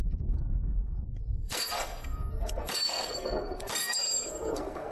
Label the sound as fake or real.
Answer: fake